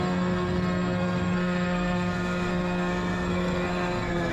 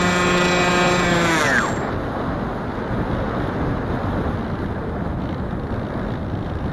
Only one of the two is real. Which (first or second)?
second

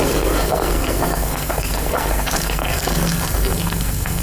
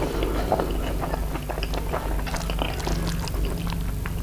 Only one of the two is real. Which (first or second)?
second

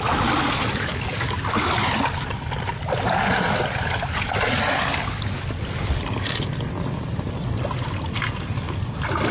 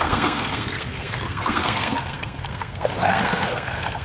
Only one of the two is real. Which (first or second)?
first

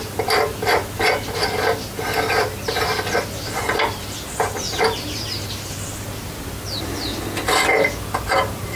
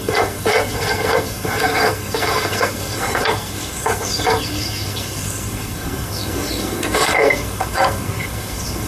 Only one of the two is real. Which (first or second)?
first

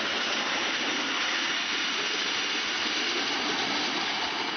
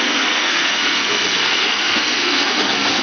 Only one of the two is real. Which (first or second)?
first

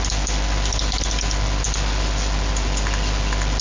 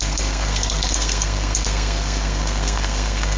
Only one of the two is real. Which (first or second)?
first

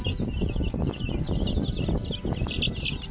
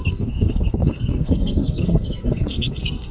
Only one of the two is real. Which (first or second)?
first